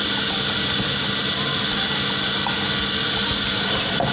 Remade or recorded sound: recorded